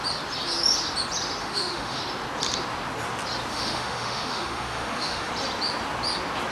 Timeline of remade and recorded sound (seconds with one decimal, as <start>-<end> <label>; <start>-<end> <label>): 0.0-1.4 recorded; 1.4-2.0 remade; 2.0-3.5 recorded; 3.5-5.3 remade; 5.3-6.5 recorded